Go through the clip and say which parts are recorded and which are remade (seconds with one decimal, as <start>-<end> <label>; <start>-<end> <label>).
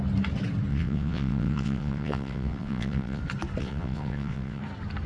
0.0-0.7 recorded; 0.7-3.2 remade; 3.2-3.6 recorded; 3.6-4.6 remade; 4.6-5.1 recorded